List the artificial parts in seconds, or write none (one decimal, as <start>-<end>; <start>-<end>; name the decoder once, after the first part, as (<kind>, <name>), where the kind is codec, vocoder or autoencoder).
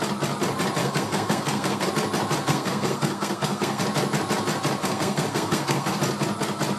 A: 0.8-1.9 (codec, SNAC); 2.5-3.8; 4.8-6.0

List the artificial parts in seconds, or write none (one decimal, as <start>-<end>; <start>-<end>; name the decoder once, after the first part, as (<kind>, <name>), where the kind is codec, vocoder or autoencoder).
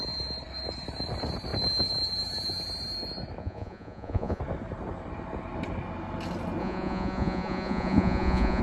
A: 3.4-4.4 (vocoder, Vocos); 6.6-8.6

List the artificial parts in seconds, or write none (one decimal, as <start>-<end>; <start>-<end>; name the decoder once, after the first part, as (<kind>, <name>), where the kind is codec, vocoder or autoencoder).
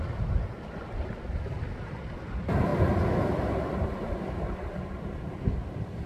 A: none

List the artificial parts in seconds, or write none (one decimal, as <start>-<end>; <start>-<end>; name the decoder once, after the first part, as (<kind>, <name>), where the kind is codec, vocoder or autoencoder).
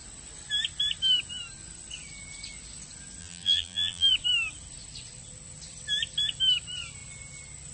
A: 3.2-4.1 (vocoder, BigVGAN v2)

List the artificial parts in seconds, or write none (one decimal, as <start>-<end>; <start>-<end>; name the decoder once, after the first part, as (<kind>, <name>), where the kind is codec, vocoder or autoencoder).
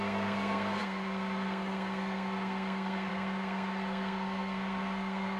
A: 0.0-5.4 (codec, SNAC)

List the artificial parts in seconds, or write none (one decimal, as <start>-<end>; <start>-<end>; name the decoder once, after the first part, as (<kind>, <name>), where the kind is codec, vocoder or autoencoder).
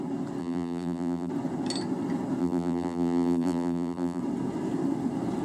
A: 0.4-1.3 (vocoder, BigVGAN v2); 2.4-4.2